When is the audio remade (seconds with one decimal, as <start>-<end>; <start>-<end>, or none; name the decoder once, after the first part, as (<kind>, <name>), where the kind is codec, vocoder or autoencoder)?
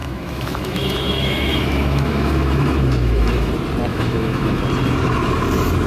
0.0-3.5 (autoencoder, DAC-VAE); 3.9-4.6